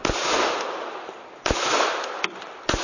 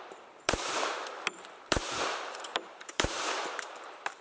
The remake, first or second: second